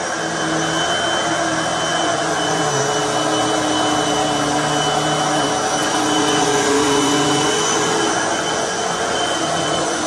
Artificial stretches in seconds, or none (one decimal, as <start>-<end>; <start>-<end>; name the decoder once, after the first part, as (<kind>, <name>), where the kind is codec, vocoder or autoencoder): 1.9-2.6 (vocoder, Vocos); 5.8-10.1